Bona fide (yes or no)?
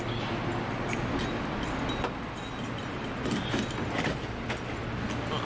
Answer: yes